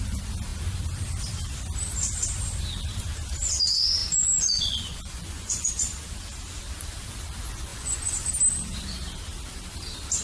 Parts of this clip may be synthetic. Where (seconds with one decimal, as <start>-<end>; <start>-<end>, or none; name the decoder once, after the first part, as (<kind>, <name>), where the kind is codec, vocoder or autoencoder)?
4.0-5.7 (vocoder, Vocos); 7.7-8.3